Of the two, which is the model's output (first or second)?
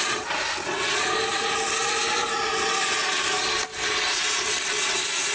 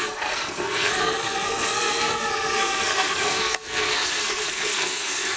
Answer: second